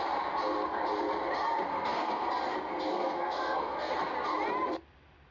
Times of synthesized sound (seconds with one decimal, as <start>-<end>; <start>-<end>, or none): 1.7-2.3; 2.9-3.9